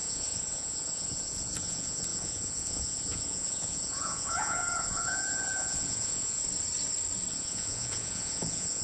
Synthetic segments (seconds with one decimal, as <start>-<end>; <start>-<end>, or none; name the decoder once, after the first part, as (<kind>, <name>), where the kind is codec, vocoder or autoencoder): 0.0-6.4 (vocoder, Vocos); 7.3-8.8